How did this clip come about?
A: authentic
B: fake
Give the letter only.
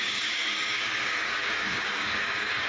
B